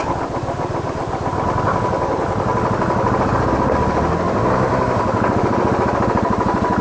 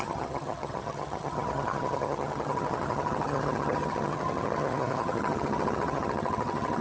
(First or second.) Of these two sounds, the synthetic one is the second